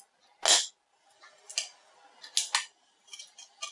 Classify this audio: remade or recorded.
recorded